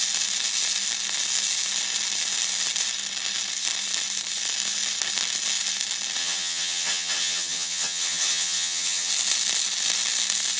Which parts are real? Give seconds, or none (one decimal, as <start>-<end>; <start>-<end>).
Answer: 0.0-6.2; 9.1-10.6